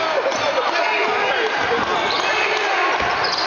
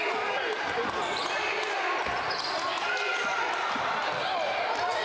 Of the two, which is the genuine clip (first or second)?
first